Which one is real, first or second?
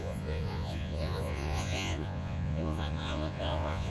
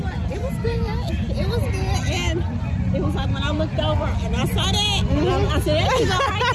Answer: second